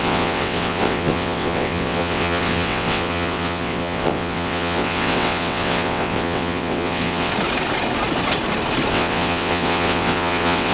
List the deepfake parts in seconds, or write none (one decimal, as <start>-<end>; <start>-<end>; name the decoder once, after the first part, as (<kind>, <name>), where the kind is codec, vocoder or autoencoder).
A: 0.0-7.3 (vocoder, WaveNeXt); 8.9-10.7

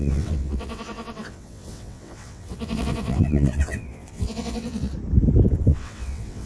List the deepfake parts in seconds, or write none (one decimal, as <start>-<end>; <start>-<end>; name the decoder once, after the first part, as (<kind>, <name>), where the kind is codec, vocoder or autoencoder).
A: 0.0-4.9 (vocoder, WaveNeXt); 5.6-6.5